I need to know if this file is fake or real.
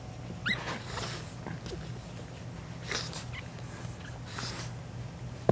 real